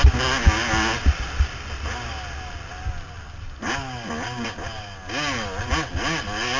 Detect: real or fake real